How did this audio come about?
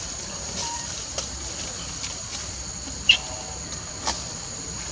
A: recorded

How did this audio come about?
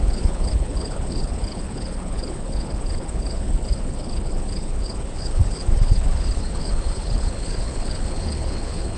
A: remade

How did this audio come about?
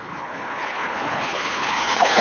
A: remade